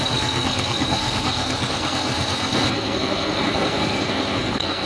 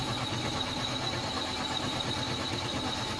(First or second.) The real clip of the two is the second